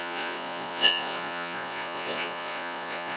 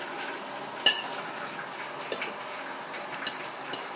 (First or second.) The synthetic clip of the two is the first